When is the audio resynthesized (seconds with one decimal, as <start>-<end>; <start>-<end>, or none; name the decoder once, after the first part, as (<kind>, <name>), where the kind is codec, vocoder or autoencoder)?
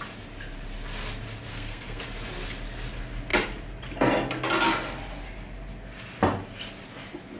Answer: 1.5-2.0 (codec, SNAC)